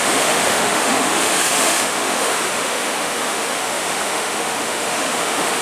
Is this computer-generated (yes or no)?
yes